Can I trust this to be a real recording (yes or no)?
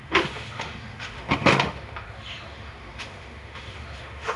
no